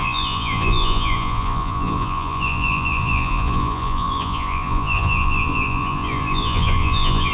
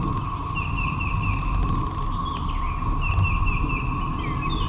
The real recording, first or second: second